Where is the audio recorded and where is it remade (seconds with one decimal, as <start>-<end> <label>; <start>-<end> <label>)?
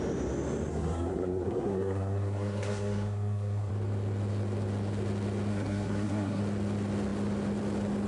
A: 0.0-0.7 recorded; 0.7-3.7 remade; 3.7-5.5 recorded; 5.5-6.4 remade; 6.4-8.1 recorded